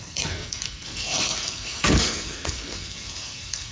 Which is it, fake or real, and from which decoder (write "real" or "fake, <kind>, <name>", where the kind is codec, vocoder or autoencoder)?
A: fake, codec, SNAC